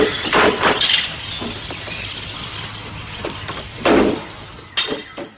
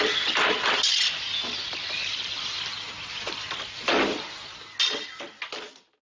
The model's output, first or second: first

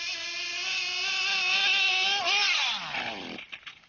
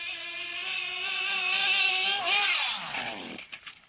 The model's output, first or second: second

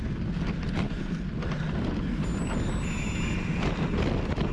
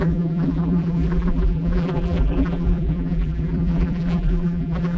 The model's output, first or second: second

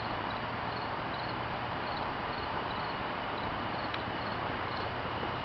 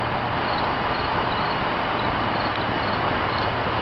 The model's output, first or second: first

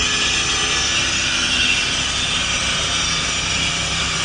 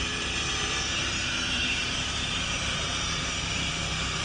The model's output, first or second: second